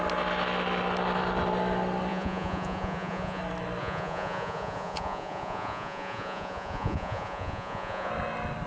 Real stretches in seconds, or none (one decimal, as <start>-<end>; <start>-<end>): 0.0-2.1; 3.4-3.8; 8.1-8.7

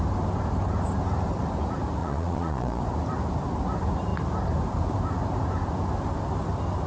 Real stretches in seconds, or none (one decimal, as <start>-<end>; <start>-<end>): 0.0-2.0; 2.8-6.9

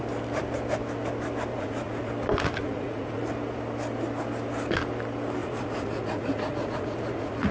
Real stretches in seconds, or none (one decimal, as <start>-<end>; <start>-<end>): 0.0-1.5; 2.1-2.6; 3.2-5.4

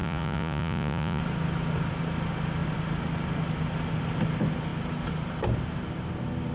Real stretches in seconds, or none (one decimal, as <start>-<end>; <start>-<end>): 1.2-6.5

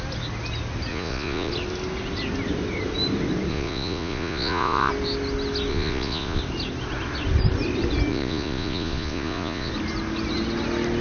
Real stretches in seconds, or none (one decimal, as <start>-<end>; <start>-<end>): 0.0-0.9; 1.5-3.5; 4.9-5.7; 6.4-8.1; 9.7-11.0

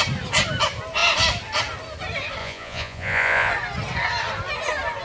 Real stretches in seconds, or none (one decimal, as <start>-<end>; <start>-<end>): 0.0-2.4; 3.5-5.0

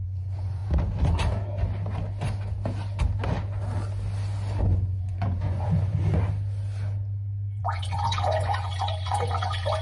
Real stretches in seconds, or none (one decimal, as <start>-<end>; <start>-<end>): 0.6-4.6; 6.0-7.6